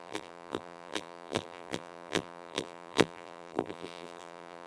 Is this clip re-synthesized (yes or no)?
yes